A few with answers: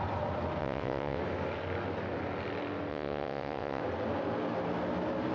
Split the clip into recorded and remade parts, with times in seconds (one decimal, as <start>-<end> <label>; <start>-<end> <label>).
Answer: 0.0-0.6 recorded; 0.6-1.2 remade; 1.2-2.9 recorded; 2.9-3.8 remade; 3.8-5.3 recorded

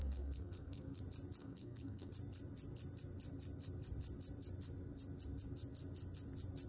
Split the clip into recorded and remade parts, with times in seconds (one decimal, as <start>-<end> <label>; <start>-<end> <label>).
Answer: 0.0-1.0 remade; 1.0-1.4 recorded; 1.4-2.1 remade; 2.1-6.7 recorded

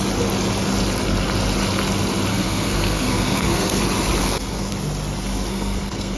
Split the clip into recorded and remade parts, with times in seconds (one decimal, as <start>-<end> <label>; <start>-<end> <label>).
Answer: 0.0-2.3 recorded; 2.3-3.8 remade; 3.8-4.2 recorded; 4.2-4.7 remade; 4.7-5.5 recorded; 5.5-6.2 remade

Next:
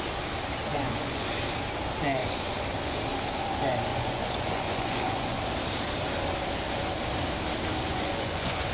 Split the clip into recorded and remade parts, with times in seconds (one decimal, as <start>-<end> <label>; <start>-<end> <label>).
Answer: 0.0-0.7 recorded; 0.7-1.3 remade; 1.3-2.2 recorded; 2.2-3.0 remade; 3.0-3.9 recorded; 3.9-5.4 remade; 5.4-7.9 recorded; 7.9-8.7 remade

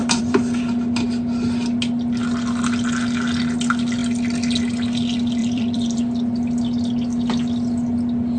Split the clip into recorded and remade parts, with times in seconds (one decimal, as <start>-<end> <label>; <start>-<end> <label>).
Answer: 0.0-0.6 remade; 0.6-5.4 recorded; 5.4-6.0 remade; 6.0-8.4 recorded

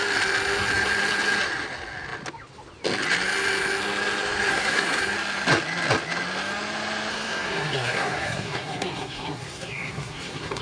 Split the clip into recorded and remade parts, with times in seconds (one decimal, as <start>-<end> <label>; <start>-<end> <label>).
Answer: 0.0-4.5 recorded; 4.5-5.0 remade; 5.0-7.1 recorded; 7.1-10.6 remade

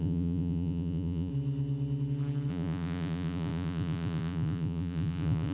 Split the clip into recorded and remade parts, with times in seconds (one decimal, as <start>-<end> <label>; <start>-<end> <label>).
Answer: 0.0-1.3 remade; 1.3-2.5 recorded; 2.5-5.5 remade

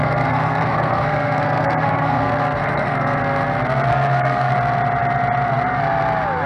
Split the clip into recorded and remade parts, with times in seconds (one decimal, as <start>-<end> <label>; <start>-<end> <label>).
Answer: 0.0-3.2 remade; 3.2-3.9 recorded; 3.9-4.5 remade; 4.5-6.5 recorded